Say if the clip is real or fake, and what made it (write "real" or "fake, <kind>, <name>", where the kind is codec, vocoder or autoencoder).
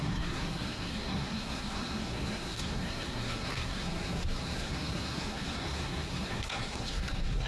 fake, codec, SNAC